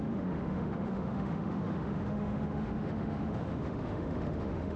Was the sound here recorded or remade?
remade